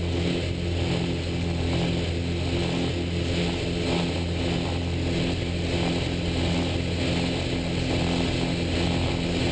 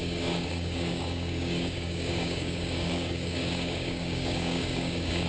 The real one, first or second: first